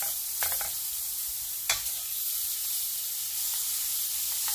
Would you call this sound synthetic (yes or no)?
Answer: no